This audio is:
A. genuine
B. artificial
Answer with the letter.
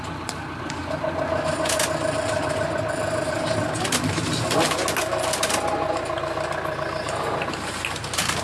A